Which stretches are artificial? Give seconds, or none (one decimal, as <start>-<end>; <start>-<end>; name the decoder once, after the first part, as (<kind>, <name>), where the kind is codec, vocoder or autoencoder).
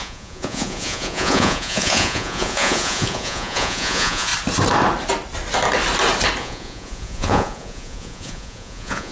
0.0-4.3 (vocoder, Vocos); 6.4-9.1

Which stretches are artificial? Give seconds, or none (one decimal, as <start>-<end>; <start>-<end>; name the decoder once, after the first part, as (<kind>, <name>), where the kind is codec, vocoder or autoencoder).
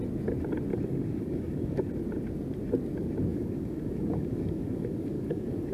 0.7-1.9 (codec, DAC); 3.3-5.7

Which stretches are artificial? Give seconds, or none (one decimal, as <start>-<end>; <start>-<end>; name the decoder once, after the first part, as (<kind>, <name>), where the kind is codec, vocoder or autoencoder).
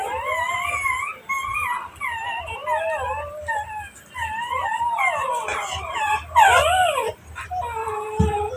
none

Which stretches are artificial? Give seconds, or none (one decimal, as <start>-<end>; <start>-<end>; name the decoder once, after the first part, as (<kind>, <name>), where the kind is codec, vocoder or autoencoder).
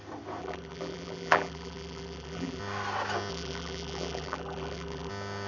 0.4-2.6 (vocoder, BigVGAN v2); 3.3-5.1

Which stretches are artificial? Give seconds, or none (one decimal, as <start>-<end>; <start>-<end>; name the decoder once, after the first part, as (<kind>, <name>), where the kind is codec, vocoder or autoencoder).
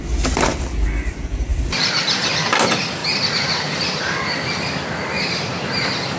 1.5-2.3 (vocoder, BigVGAN v2); 3.0-4.0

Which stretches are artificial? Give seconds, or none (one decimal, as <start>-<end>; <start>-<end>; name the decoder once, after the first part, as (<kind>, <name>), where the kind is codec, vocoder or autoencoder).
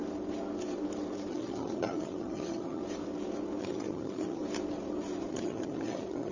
1.3-2.8 (vocoder, HiFi-GAN); 3.6-4.4; 5.3-6.3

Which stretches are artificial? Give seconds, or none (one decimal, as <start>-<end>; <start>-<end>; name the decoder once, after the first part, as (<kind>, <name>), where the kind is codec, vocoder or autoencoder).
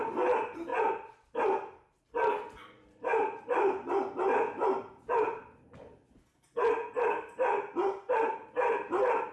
none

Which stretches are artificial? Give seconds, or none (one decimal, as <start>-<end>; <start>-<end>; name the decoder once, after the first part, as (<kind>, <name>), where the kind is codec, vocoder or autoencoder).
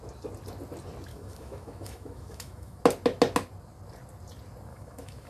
1.1-2.8 (autoencoder, DAC-VAE); 4.7-5.3